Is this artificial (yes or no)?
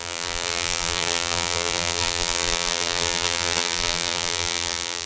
yes